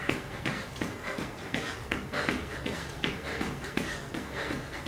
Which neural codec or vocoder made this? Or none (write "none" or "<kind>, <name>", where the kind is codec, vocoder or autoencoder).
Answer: codec, SNAC